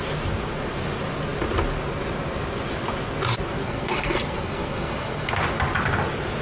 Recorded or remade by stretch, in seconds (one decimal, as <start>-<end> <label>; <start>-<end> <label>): 0.0-3.6 recorded; 3.6-5.3 remade; 5.3-6.4 recorded

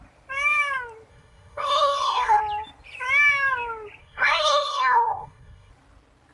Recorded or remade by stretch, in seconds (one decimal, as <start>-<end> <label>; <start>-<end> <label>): 0.0-1.1 recorded; 1.1-2.4 remade; 2.4-4.0 recorded; 4.0-5.7 remade; 5.7-6.3 recorded

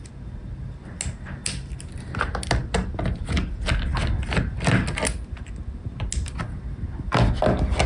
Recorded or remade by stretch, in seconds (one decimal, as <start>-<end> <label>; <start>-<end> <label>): 0.0-7.9 recorded

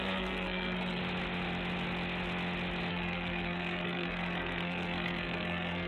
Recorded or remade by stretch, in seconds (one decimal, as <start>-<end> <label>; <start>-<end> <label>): 0.0-1.0 remade; 1.0-2.9 recorded; 2.9-5.9 remade

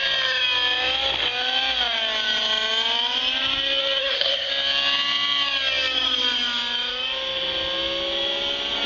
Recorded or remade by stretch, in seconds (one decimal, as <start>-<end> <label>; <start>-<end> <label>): 0.0-4.0 recorded; 4.0-4.5 remade; 4.5-8.9 recorded

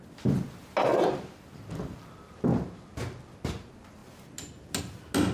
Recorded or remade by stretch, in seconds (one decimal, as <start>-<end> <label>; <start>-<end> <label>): 0.0-5.3 recorded

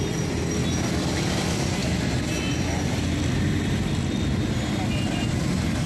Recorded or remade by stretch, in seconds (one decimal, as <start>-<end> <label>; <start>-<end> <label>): 0.0-5.9 recorded